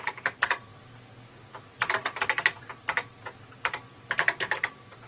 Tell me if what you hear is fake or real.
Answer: real